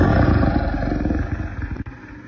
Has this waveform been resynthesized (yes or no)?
no